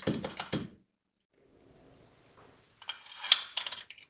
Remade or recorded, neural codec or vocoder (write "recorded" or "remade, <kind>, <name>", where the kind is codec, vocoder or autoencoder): recorded